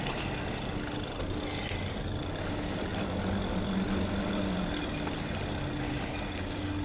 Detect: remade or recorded recorded